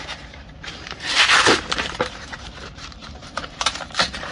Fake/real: fake